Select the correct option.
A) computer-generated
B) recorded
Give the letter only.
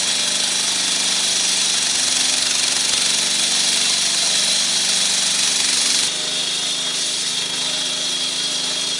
B